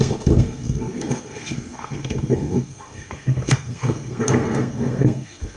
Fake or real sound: fake